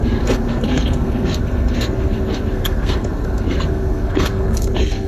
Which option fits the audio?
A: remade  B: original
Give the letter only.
A